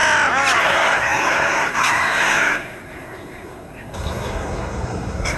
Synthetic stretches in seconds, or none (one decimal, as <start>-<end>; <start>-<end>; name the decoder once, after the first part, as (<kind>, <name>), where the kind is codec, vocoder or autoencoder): 0.6-5.4 (codec, SNAC)